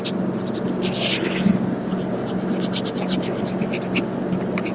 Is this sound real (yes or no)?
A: yes